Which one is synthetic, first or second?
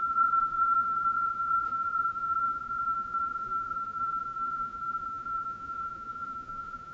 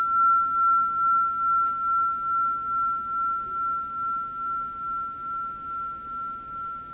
first